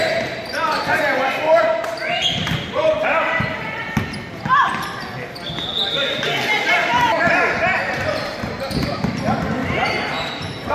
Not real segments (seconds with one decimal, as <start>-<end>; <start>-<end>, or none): 2.8-3.9; 9.6-10.7